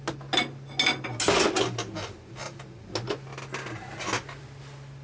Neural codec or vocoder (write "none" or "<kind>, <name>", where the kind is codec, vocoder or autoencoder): none